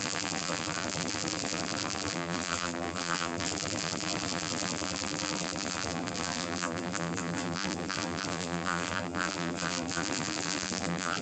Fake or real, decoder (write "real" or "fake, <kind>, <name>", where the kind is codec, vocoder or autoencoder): fake, vocoder, BigVGAN v2